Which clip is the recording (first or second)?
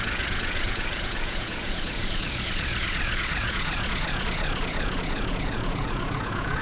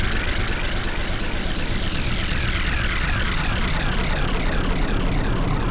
second